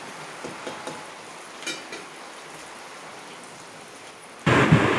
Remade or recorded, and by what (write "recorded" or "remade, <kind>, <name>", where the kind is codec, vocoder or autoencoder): recorded